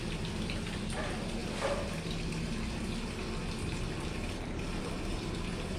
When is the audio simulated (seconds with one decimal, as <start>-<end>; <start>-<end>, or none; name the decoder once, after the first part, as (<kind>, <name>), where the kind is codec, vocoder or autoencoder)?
none